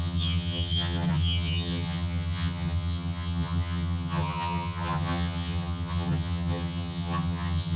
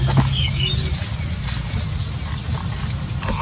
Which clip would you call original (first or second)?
second